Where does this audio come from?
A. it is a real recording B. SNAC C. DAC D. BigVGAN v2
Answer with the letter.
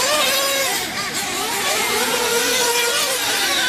A